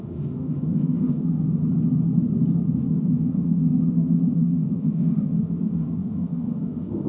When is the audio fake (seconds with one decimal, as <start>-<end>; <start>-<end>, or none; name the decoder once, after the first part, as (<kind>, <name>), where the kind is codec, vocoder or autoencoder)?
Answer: 0.0-1.6 (autoencoder, DAC-VAE); 2.7-7.1